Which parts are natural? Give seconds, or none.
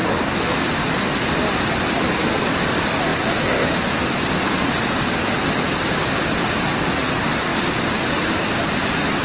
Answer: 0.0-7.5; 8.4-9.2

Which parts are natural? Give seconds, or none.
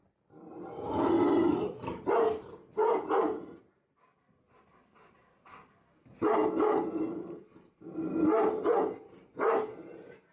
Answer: 0.0-10.3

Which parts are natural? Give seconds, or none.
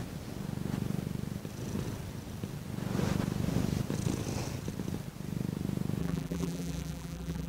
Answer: 0.0-6.0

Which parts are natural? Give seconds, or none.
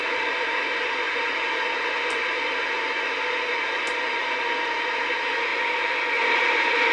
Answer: 0.0-5.5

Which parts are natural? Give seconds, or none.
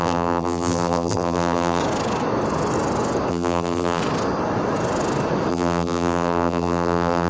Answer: 1.8-3.3; 4.0-5.5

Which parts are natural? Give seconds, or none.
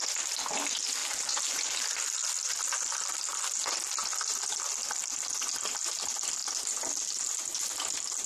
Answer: 0.0-1.0; 1.8-8.3